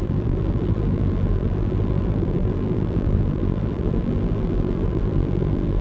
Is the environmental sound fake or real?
fake